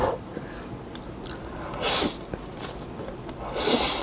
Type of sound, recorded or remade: recorded